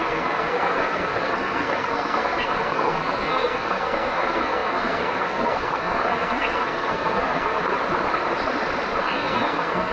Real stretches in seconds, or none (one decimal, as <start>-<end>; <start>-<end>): 7.6-9.0